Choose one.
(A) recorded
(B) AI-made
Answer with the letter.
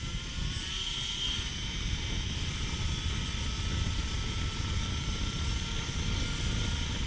A